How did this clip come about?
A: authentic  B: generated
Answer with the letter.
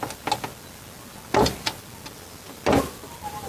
A